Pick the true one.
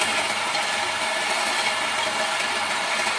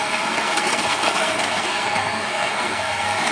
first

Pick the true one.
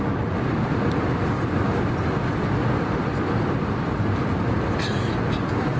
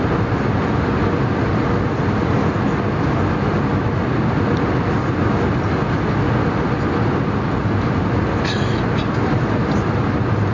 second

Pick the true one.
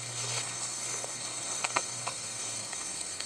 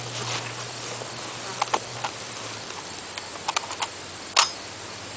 second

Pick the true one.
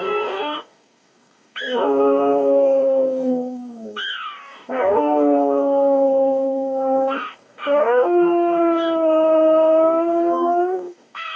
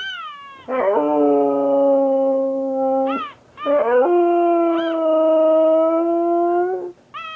second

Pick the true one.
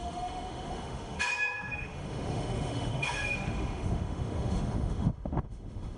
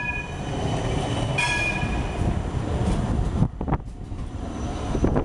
second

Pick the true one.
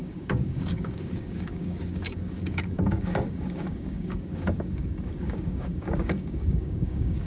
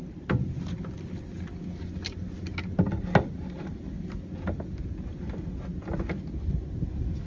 second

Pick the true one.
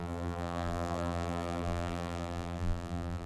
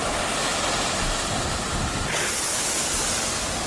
second